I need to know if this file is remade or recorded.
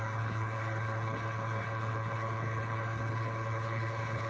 remade